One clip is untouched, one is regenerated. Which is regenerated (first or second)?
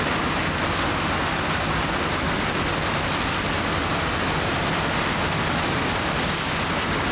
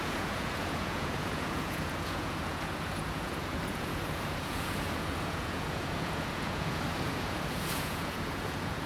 second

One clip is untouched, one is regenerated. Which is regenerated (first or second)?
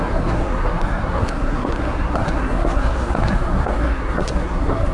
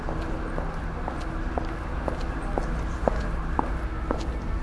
first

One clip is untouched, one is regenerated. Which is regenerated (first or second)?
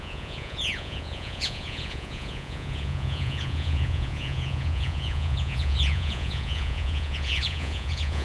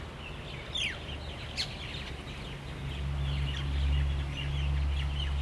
first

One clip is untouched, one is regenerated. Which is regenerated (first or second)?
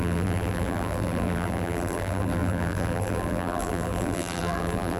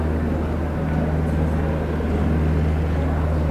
first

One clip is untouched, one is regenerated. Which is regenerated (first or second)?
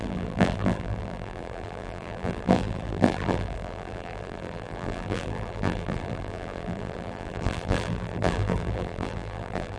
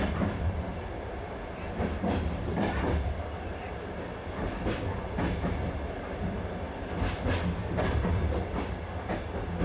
first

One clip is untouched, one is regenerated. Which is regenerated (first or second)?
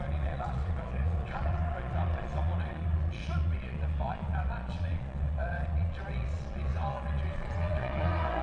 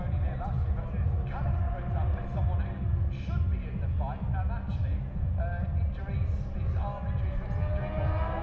first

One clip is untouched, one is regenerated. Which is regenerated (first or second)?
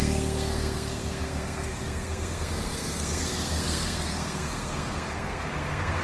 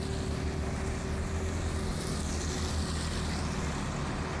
first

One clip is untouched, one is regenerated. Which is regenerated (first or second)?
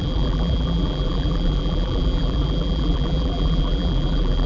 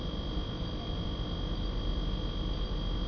first